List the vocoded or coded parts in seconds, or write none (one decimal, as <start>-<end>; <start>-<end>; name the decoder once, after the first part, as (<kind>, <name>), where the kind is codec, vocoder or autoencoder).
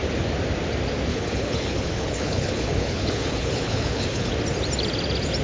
1.1-4.3 (codec, HILCodec)